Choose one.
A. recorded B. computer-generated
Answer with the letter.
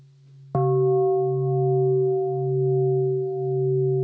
A